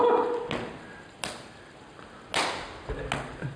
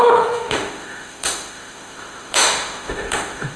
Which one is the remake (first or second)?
second